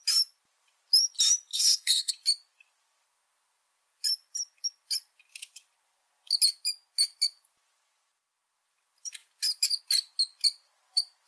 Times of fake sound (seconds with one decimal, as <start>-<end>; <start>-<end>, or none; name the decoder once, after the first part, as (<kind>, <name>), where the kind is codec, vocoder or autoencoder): 1.5-2.1 (codec, SNAC)